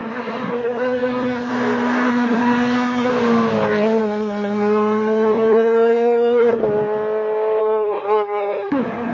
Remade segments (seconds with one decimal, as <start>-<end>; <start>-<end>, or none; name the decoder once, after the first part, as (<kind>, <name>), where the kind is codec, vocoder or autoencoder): 0.0-1.5 (codec, SNAC); 2.1-3.1; 4.0-6.6; 7.6-9.1